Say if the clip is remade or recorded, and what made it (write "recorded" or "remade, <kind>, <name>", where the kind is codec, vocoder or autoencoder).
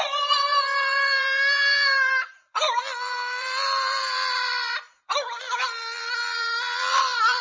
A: remade, vocoder, BigVGAN v2